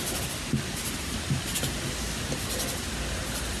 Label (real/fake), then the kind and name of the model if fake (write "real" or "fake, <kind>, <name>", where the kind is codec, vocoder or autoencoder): real